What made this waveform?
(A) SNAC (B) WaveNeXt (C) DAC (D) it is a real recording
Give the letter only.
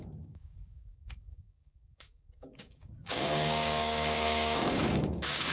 C